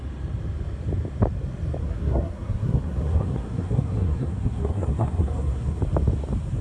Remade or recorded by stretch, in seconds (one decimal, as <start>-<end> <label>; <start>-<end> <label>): 0.0-1.8 recorded; 1.8-5.8 remade; 5.8-6.6 recorded